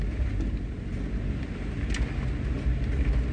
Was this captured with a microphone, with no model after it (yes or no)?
yes